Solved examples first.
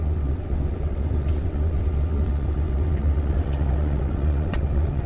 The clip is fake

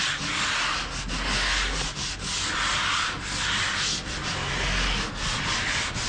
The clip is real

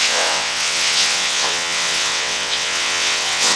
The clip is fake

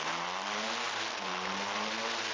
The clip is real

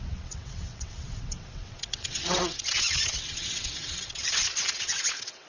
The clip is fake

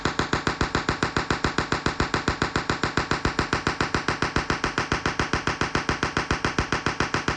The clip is real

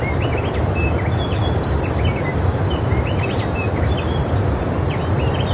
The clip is real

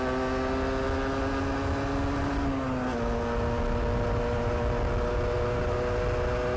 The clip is real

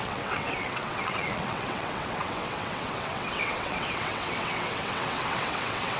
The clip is fake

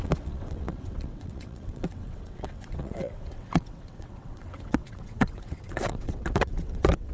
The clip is fake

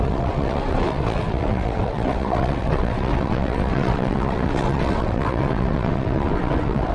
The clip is fake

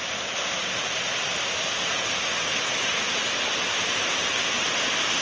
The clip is real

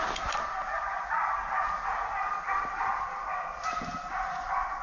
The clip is real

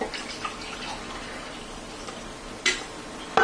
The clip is real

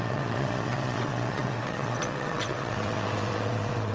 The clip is fake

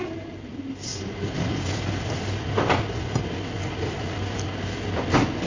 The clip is real